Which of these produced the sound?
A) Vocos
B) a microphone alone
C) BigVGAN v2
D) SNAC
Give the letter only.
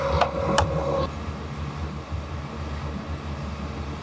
B